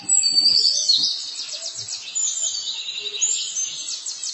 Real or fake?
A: real